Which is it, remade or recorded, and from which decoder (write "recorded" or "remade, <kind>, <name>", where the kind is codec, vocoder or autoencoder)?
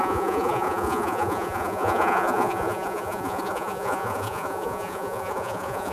remade, vocoder, Vocos